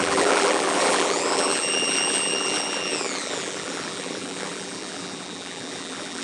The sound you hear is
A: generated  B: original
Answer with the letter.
A